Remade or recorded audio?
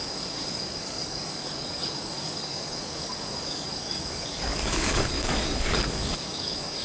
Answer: remade